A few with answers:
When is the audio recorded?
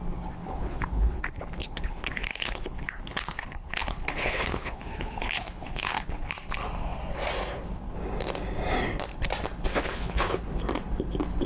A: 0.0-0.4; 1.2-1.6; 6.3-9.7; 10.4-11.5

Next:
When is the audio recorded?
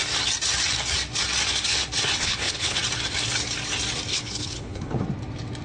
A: 0.0-2.2; 2.8-4.1; 5.0-5.6